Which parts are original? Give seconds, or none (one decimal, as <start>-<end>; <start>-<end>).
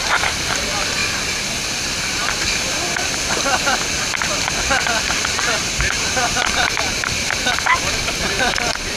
1.0-1.7; 2.2-7.0